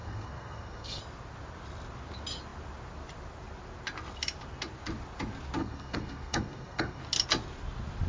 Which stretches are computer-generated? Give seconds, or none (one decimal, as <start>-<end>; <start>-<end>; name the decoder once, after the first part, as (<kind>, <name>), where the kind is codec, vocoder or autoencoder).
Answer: 0.0-1.0 (codec, SNAC); 5.6-7.0